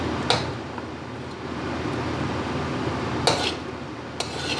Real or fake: real